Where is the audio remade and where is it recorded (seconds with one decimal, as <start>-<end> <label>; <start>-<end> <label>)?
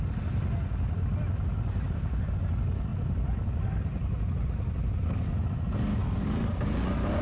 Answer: 0.0-2.9 recorded; 2.9-5.1 remade; 5.1-7.2 recorded